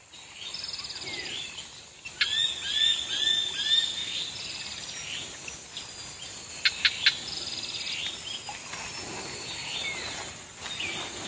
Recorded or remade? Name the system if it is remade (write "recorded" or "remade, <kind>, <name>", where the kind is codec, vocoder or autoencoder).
recorded